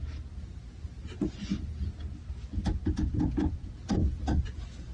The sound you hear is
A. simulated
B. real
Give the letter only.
B